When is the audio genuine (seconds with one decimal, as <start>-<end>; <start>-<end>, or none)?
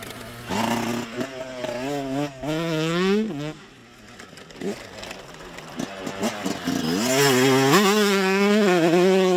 0.0-9.4